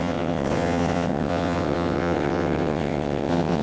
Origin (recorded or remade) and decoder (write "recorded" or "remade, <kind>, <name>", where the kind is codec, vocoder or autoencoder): remade, vocoder, WaveNeXt